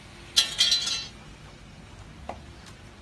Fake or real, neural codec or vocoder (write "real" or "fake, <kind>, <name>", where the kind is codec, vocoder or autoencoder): real